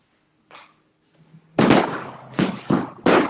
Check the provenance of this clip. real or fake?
real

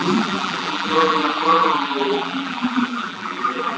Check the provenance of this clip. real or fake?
fake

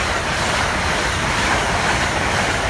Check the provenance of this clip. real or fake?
real